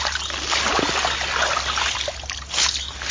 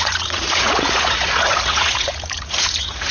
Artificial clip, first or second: second